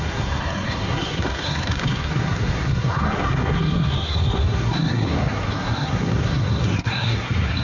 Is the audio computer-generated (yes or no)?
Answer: yes